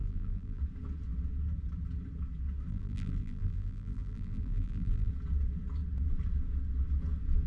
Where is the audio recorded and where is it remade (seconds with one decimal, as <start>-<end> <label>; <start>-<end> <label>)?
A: 0.0-0.6 remade; 0.6-2.7 recorded; 2.7-5.1 remade; 5.1-7.5 recorded